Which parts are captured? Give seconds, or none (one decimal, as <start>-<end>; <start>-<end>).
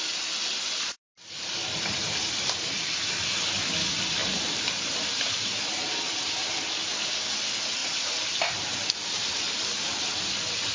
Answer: 0.0-4.2; 6.5-7.8